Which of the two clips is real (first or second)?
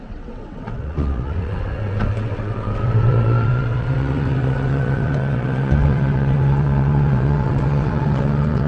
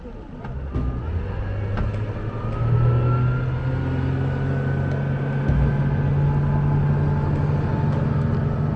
second